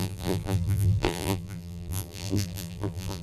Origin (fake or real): fake